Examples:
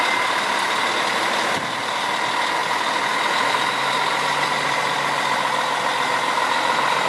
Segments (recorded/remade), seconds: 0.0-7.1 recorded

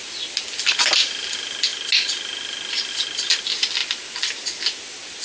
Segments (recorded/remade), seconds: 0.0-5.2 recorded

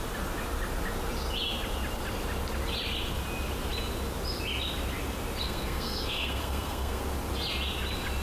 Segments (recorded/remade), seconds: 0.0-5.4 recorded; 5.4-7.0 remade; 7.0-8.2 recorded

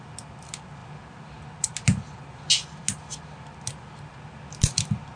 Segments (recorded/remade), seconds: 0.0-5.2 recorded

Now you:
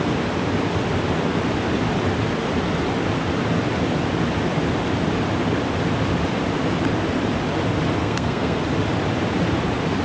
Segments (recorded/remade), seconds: 0.0-8.0 recorded; 8.0-8.6 remade; 8.6-10.0 recorded